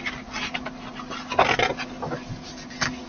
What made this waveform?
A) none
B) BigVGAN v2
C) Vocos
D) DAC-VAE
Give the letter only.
A